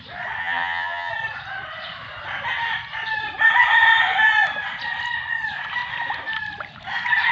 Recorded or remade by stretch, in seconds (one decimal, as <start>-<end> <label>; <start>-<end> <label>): 0.0-0.4 recorded; 0.4-1.1 remade; 1.1-7.3 recorded